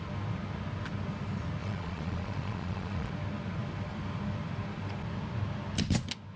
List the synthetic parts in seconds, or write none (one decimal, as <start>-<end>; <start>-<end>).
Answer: 1.6-3.1